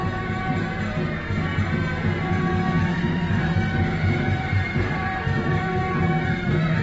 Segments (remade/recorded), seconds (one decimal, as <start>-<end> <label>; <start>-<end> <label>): 0.0-0.8 remade; 0.8-2.9 recorded; 2.9-6.8 remade